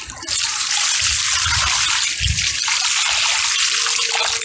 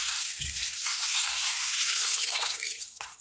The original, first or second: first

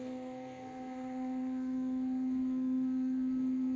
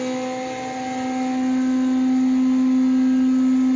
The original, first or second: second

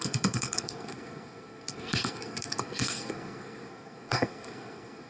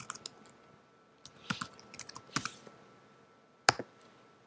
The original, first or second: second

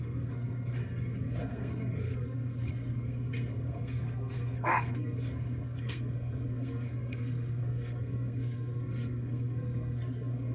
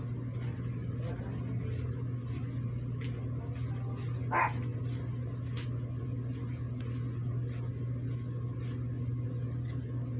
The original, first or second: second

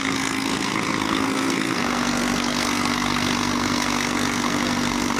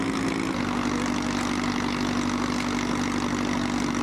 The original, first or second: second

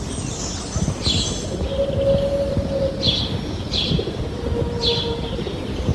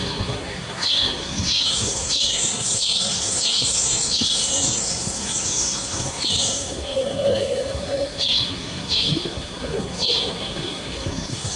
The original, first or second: first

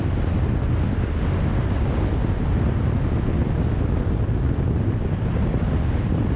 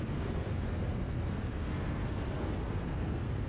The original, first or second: first